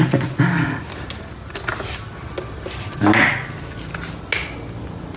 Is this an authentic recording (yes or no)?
yes